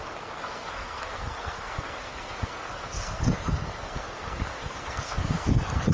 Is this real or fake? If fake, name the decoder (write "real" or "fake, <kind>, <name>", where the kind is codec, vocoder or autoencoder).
fake, codec, SNAC